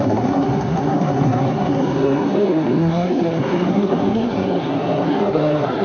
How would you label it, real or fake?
fake